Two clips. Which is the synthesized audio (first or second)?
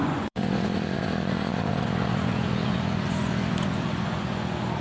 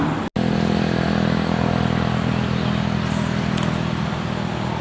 first